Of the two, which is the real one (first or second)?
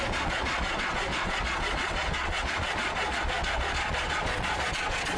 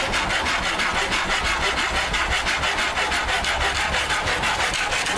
second